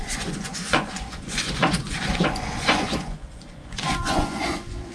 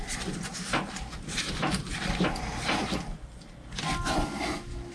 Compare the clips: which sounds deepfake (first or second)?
first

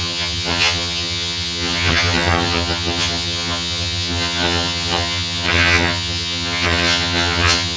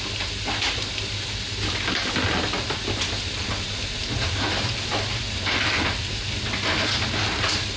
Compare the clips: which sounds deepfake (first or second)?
first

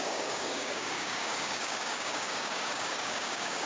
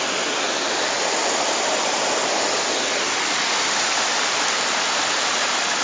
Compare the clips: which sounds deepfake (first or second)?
first